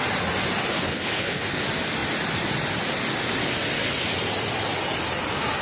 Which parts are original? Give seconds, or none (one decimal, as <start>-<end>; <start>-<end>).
0.0-0.7; 1.6-5.6